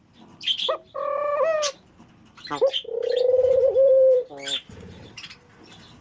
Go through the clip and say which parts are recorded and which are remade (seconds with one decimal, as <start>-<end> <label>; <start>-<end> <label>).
0.0-3.7 recorded; 3.7-5.1 remade; 5.1-6.0 recorded